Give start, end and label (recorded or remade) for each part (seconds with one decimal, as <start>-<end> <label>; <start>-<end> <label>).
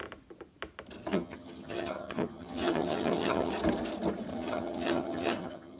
0.0-1.1 recorded; 1.1-3.5 remade; 3.5-4.3 recorded; 4.3-5.8 remade